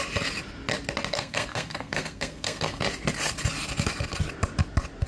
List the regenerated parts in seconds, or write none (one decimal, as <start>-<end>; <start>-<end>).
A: 1.1-2.8